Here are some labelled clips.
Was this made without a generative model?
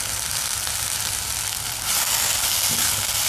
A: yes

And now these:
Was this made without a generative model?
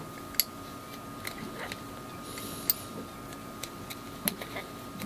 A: yes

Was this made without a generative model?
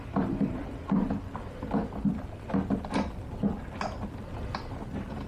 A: yes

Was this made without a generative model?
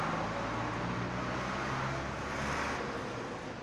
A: yes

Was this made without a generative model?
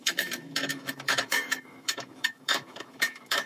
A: no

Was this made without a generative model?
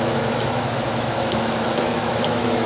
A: no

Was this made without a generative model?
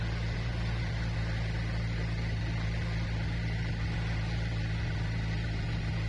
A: yes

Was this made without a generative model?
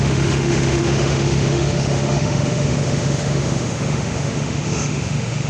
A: no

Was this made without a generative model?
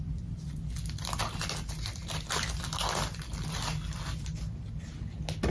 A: yes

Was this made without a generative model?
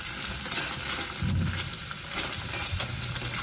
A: yes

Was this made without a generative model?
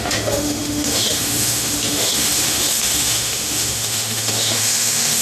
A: no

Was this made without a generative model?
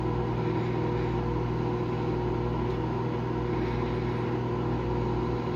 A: yes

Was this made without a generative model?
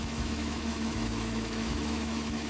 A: no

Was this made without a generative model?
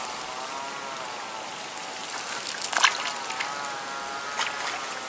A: yes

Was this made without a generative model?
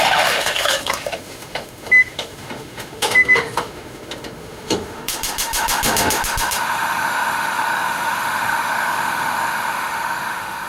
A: no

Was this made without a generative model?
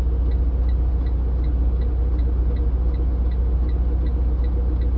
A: yes